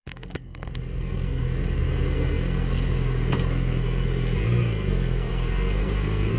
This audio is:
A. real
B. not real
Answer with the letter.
B